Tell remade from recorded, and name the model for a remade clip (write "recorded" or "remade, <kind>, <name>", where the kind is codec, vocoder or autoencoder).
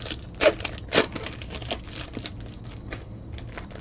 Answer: recorded